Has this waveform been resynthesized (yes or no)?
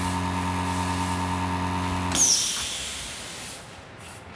no